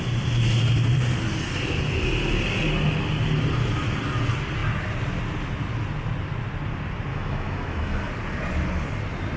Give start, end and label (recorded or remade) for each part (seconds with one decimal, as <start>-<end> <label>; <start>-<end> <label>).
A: 0.0-7.1 recorded; 7.1-8.1 remade; 8.1-9.4 recorded